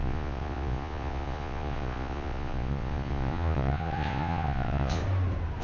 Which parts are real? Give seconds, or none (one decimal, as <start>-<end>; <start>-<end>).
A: 5.0-5.6